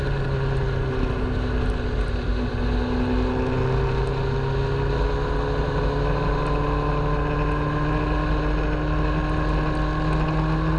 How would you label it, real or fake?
real